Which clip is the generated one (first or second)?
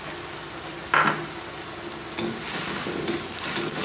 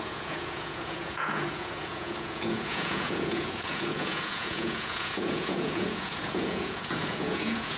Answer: second